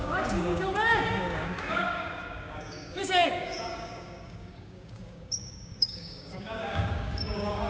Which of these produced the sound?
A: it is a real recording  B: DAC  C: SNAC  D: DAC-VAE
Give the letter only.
B